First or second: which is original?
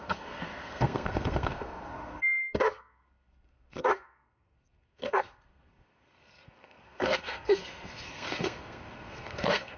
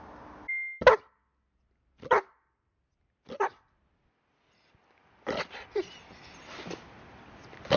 second